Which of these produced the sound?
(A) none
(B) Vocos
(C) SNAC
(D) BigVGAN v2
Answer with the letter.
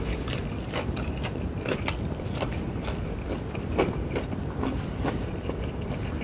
D